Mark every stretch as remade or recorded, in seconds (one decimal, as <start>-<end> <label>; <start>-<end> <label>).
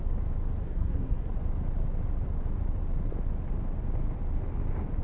0.0-0.6 recorded; 0.6-1.3 remade; 1.3-5.0 recorded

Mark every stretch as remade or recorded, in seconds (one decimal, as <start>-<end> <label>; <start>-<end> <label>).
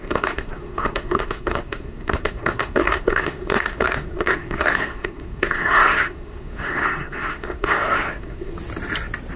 0.0-8.5 remade; 8.5-9.4 recorded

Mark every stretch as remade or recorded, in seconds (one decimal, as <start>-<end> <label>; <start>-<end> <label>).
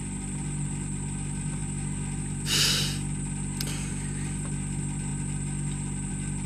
0.0-6.5 recorded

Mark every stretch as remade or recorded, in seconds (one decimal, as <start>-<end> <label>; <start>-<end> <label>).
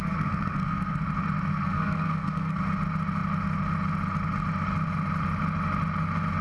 0.0-1.0 remade; 1.0-1.5 recorded; 1.5-2.6 remade; 2.6-6.4 recorded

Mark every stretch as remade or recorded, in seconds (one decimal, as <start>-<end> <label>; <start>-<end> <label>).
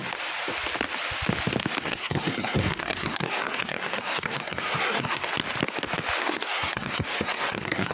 0.0-1.8 recorded; 1.8-5.3 remade; 5.3-6.2 recorded; 6.2-7.9 remade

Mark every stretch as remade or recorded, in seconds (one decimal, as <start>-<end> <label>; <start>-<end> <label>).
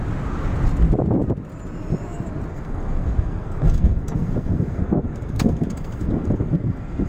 0.0-2.5 recorded; 2.5-7.1 remade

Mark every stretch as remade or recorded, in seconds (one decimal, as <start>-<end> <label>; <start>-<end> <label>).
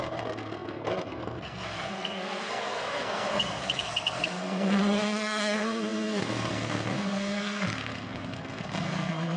0.0-9.4 remade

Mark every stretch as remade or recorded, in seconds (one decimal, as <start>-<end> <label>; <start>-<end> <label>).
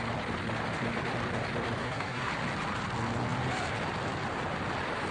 0.0-1.8 recorded; 1.8-2.3 remade; 2.3-5.1 recorded